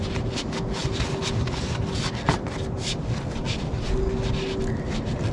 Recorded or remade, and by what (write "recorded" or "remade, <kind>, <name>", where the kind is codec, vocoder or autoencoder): recorded